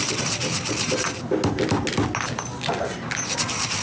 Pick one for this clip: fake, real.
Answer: real